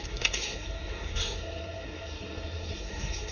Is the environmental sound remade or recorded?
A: remade